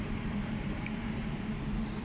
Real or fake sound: fake